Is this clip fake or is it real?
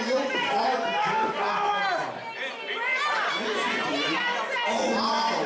real